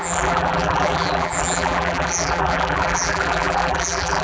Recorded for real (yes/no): no